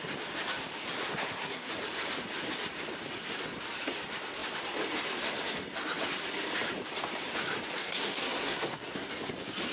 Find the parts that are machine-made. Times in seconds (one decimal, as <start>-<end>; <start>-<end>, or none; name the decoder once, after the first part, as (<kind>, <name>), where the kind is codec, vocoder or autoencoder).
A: 1.0-1.7 (codec, SNAC); 7.8-9.1